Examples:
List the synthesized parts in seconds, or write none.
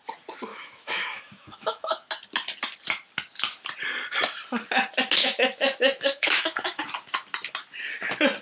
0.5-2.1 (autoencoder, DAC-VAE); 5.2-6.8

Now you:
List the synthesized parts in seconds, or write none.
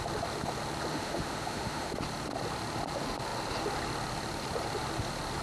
0.9-1.9 (autoencoder, DAC-VAE)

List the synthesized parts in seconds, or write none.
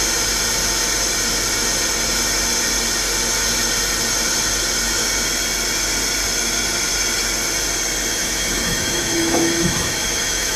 8.1-10.6 (autoencoder, DAC-VAE)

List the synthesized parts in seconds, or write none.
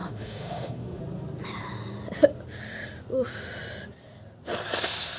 0.0-1.0 (autoencoder, DAC-VAE)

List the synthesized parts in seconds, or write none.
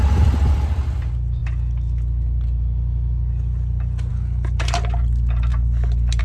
none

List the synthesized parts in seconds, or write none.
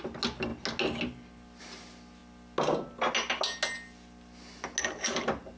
none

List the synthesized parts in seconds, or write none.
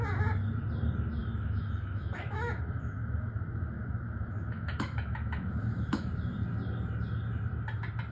1.2-6.1 (autoencoder, DAC-VAE)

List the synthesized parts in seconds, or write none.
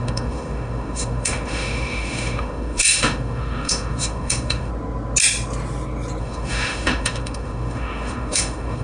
0.0-4.7 (autoencoder, DAC-VAE); 6.2-8.8